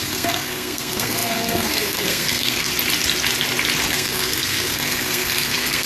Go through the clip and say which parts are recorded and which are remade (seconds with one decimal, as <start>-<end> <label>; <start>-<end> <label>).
0.0-2.7 remade; 2.7-3.9 recorded; 3.9-5.9 remade